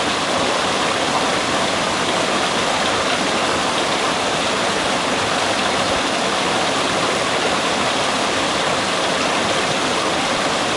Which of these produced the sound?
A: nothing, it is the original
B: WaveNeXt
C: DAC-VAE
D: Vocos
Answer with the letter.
A